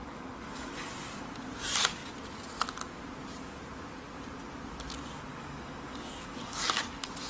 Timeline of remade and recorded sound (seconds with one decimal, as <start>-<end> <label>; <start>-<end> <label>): 0.0-0.9 remade; 0.9-5.3 recorded; 5.3-6.8 remade; 6.8-7.3 recorded